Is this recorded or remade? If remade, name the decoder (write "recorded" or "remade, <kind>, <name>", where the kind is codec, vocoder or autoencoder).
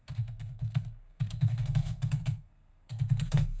remade, codec, SNAC